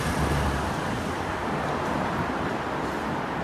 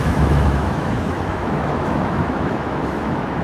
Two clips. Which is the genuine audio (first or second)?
first